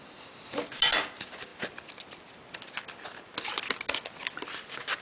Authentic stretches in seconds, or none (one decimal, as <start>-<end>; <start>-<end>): 0.0-5.0